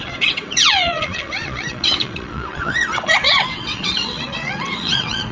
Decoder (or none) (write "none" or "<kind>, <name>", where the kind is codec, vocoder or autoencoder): vocoder, WaveNeXt